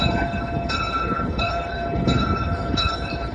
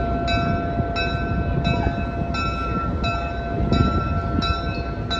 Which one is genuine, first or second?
second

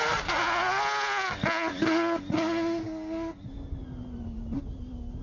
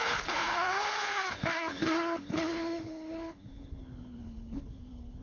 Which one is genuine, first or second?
first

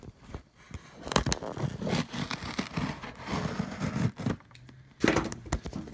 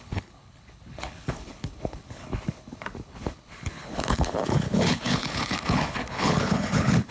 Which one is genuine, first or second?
first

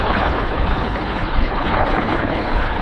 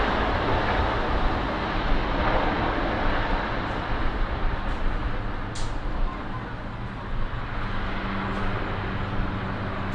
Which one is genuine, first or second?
second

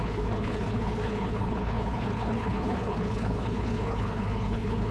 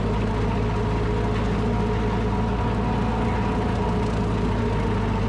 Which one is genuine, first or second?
second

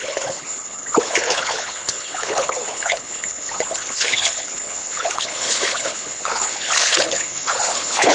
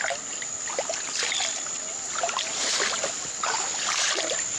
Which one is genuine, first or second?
second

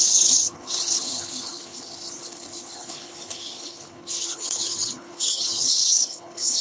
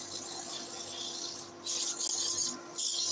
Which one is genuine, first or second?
second